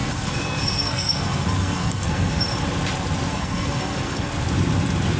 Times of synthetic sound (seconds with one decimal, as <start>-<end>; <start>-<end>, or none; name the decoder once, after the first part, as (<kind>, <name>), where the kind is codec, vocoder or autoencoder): 0.0-2.4 (codec, SNAC); 3.3-4.3